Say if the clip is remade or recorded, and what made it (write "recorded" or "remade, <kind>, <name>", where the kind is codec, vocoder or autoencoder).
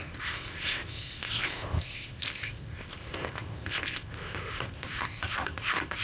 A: remade, codec, ZipCodec